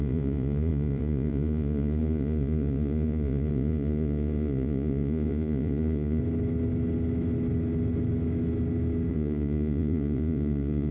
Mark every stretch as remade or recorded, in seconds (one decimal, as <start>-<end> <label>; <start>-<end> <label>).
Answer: 0.0-6.2 remade; 6.2-9.1 recorded; 9.1-10.9 remade